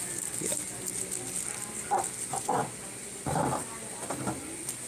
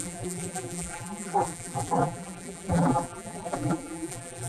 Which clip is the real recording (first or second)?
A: first